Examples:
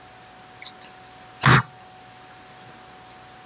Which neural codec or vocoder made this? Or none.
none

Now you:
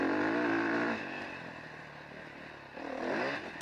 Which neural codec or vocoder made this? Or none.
none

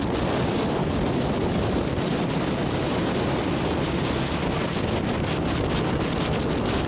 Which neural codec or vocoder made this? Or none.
none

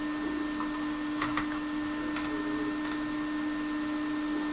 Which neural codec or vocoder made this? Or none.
none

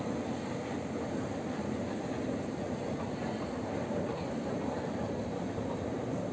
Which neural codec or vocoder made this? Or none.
vocoder, BigVGAN v2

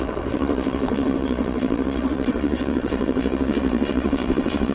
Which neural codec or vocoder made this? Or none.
vocoder, WaveNeXt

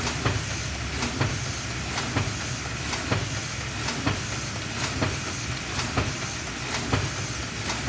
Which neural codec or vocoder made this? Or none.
none